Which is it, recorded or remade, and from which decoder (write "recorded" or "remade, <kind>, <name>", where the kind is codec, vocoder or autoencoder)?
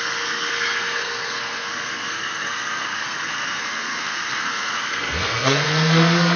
remade, codec, SNAC